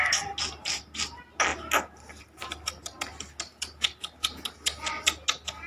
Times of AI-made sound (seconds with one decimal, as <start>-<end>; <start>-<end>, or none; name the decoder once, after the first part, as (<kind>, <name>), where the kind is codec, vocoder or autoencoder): 3.5-4.4 (vocoder, BigVGAN v2)